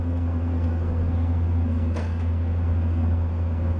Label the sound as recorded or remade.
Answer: remade